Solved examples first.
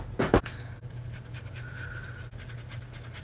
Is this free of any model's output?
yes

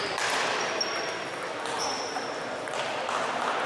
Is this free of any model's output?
yes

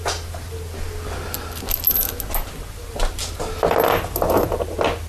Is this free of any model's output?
yes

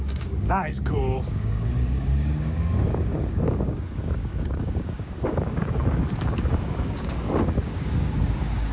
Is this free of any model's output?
no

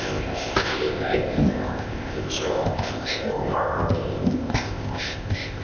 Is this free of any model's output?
no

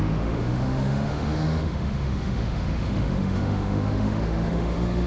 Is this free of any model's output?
no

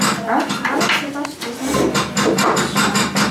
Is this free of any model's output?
yes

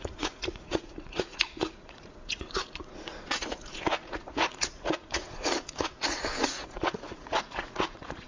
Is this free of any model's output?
no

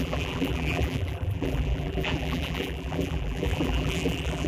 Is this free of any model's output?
no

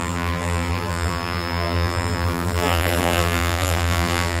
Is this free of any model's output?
no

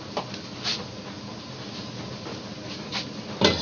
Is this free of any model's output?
yes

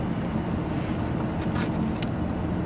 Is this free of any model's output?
yes